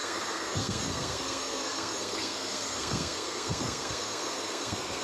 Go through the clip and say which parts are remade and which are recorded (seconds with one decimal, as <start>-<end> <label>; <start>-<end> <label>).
0.0-5.0 remade